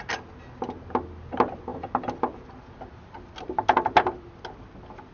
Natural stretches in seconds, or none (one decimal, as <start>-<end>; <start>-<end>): 0.0-5.1